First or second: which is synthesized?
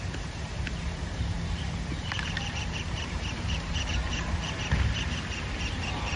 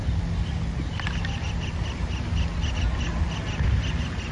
first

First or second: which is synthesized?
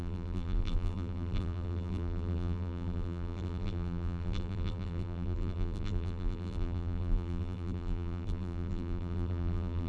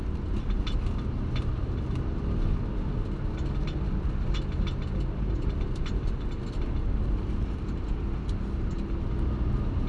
first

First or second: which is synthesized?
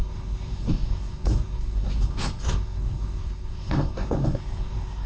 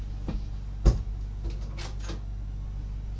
first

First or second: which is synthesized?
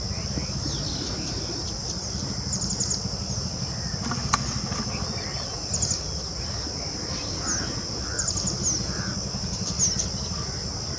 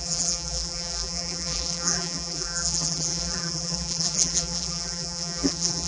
second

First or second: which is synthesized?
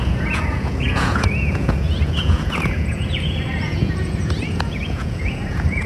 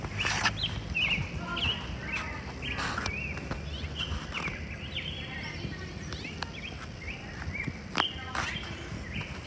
first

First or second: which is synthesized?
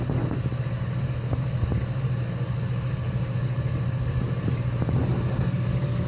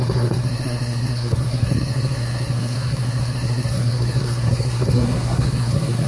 second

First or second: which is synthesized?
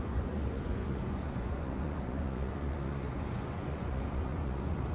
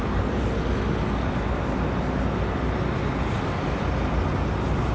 first